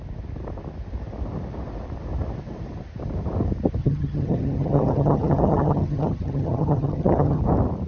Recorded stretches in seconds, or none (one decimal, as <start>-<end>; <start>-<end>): 0.0-3.8; 7.4-7.9